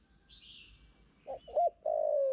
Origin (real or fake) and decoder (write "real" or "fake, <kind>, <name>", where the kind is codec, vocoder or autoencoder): real